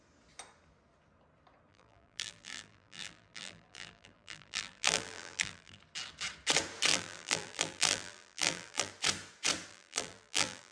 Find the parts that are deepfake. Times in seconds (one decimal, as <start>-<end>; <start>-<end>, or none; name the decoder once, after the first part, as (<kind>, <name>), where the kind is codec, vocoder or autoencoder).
1.7-5.8 (vocoder, BigVGAN v2); 6.9-8.9; 9.7-10.7